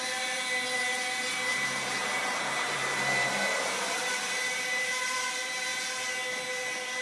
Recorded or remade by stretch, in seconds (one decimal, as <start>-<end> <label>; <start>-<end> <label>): 0.0-1.5 recorded; 1.5-5.2 remade; 5.2-7.0 recorded